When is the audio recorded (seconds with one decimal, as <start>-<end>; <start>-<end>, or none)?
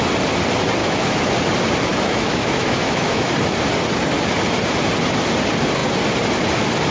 0.0-0.8; 1.3-1.9; 3.3-6.9